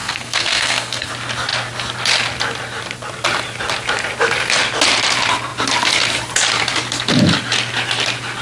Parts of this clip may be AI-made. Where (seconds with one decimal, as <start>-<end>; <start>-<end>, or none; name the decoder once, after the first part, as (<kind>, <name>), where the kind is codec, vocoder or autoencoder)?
0.0-1.1 (codec, SNAC)

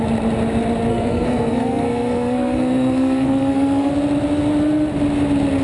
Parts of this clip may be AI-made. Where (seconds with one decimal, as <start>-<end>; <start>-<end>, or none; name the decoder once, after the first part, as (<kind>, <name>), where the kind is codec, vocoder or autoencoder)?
0.9-3.9 (codec, SNAC)

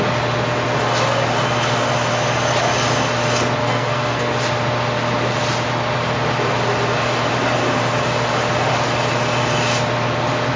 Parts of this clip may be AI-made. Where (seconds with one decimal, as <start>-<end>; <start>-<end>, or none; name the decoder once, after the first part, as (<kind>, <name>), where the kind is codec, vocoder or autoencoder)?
3.6-4.3 (codec, SNAC)

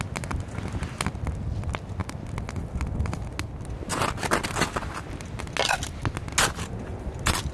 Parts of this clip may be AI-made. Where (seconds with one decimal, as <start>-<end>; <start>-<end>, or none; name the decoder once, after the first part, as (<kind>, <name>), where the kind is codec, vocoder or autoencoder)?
none

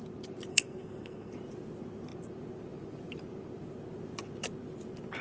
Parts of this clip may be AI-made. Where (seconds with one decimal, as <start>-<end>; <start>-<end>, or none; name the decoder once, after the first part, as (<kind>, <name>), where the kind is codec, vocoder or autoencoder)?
0.5-1.3 (codec, SNAC)

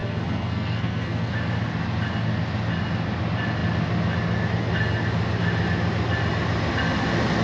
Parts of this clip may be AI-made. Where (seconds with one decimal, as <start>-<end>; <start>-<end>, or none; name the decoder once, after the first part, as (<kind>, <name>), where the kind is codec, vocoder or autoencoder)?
0.0-1.3 (codec, SNAC)

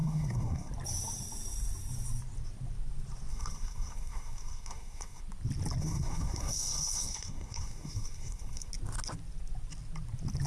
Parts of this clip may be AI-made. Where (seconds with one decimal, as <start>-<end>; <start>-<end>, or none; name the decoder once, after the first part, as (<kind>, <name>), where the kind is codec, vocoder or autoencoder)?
0.0-0.7 (codec, SNAC); 3.3-5.2; 5.8-8.7

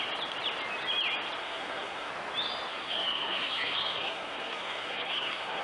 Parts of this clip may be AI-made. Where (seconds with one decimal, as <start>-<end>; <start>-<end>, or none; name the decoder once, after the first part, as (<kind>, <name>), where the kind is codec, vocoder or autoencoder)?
1.4-2.1 (codec, SNAC); 2.7-5.6